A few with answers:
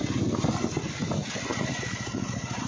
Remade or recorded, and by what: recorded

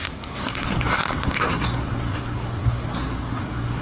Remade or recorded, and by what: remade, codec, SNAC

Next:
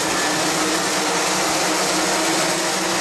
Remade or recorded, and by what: recorded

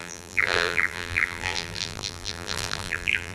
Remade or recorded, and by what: remade, vocoder, BigVGAN v2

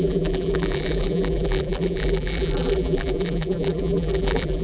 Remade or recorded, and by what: remade, vocoder, BigVGAN v2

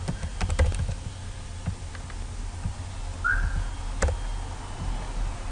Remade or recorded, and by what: recorded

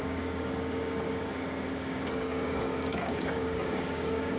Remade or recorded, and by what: remade, codec, DAC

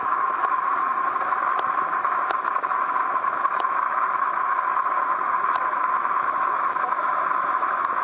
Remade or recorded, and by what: remade, autoencoder, DAC-VAE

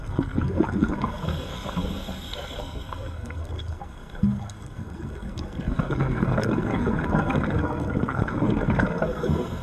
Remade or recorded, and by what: remade, codec, SNAC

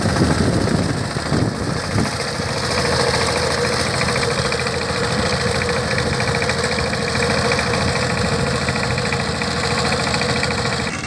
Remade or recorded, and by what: recorded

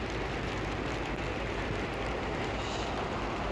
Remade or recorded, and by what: recorded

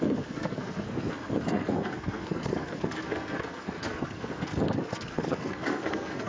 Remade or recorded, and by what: remade, codec, SNAC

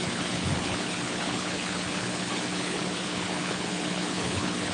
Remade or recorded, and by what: remade, codec, HILCodec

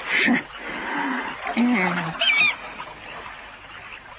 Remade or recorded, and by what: recorded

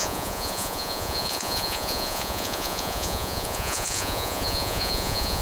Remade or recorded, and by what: remade, vocoder, Vocos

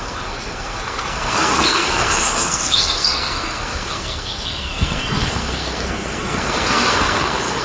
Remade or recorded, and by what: remade, codec, SNAC